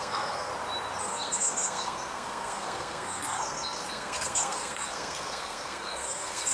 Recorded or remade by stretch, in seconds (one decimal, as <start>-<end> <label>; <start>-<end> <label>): 0.0-0.5 remade; 0.5-1.0 recorded; 1.0-6.5 remade